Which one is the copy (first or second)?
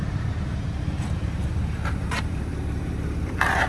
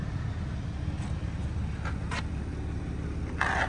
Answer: first